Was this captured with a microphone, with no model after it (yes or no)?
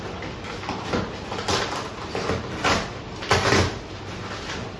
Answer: yes